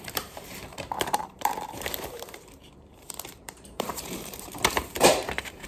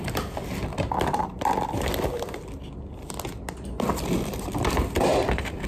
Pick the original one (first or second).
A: second